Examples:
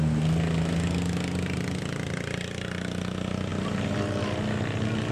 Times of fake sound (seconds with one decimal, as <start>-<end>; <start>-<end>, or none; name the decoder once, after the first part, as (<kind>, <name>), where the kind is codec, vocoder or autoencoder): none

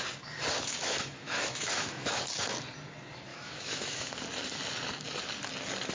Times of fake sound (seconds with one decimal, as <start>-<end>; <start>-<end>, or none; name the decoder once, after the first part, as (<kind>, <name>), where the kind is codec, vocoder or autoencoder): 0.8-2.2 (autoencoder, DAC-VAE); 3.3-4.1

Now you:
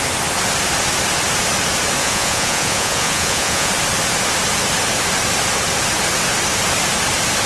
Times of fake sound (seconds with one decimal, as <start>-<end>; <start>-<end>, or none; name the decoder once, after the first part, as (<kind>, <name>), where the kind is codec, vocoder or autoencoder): 2.0-3.7 (vocoder, Vocos)